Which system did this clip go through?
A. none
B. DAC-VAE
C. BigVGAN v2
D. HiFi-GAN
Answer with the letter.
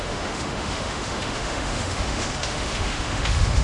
B